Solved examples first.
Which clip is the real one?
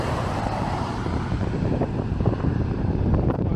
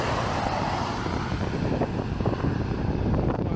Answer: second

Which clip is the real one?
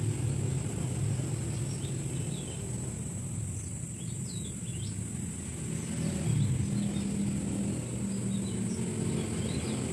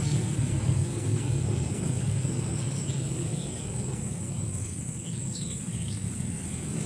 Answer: first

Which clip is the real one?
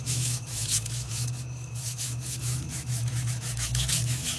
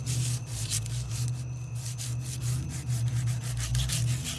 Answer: second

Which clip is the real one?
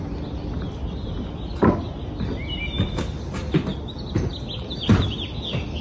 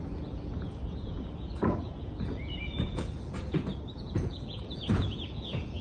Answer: first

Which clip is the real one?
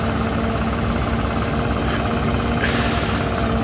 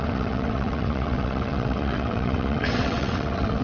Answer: first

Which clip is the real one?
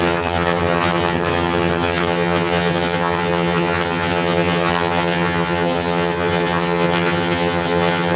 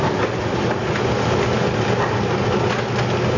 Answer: second